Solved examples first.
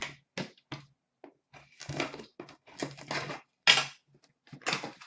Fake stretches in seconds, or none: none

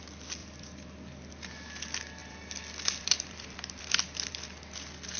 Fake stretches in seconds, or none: 0.4-1.3 (vocoder, BigVGAN v2); 2.2-4.3

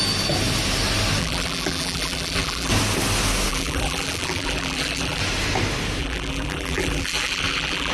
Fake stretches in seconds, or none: 1.2-2.7 (vocoder, BigVGAN v2); 3.5-5.2; 6.0-7.9

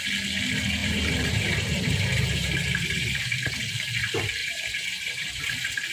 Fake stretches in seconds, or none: 0.8-3.5 (vocoder, BigVGAN v2); 4.4-5.4

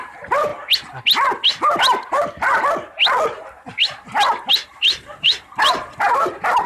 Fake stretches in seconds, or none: 0.0-0.5 (vocoder, BigVGAN v2); 4.5-6.7

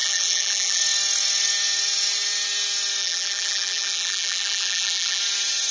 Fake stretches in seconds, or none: 0.0-0.8 (vocoder, BigVGAN v2); 3.0-5.2

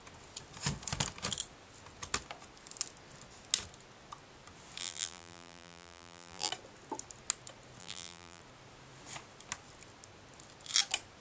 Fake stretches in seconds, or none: 4.8-6.5 (vocoder, BigVGAN v2); 7.8-8.4

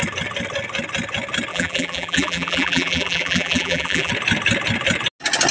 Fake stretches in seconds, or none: 1.5-4.1 (vocoder, BigVGAN v2)